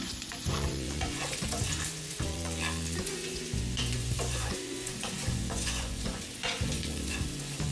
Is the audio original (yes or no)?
no